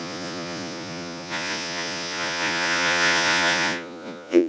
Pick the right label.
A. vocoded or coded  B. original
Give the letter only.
A